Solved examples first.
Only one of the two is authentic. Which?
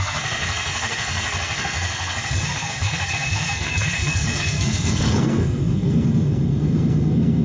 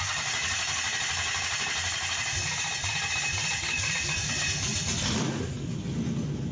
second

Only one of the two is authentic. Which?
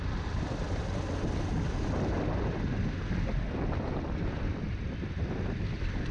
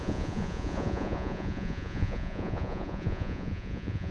first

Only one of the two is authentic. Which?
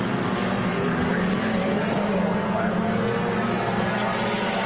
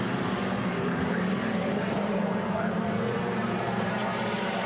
first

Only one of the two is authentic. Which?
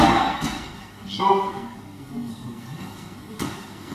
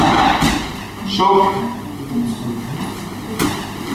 second